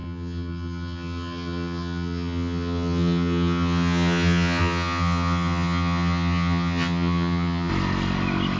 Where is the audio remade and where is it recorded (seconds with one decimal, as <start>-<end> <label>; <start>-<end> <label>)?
0.0-7.7 remade; 7.7-8.6 recorded

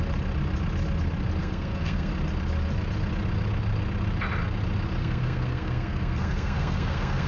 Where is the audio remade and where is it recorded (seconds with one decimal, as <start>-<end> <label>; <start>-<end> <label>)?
0.0-1.4 recorded; 1.4-2.1 remade; 2.1-5.0 recorded; 5.0-7.3 remade

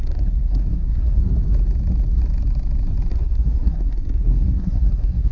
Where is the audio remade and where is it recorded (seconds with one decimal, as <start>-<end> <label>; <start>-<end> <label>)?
0.0-1.2 remade; 1.2-3.1 recorded; 3.1-5.3 remade

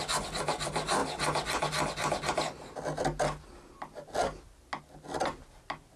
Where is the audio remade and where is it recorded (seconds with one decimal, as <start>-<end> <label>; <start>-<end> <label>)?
0.0-6.0 recorded

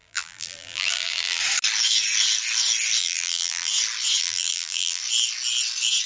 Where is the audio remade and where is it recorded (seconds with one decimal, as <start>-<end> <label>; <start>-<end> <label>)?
0.0-1.4 remade; 1.4-3.0 recorded; 3.0-3.7 remade; 3.7-4.2 recorded; 4.2-5.0 remade; 5.0-6.1 recorded

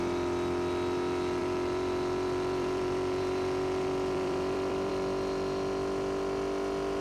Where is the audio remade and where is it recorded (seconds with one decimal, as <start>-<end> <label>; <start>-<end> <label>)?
0.0-1.4 recorded; 1.4-4.9 remade; 4.9-7.0 recorded